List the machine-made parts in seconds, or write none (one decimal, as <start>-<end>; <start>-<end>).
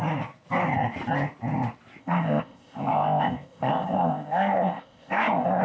2.0-5.6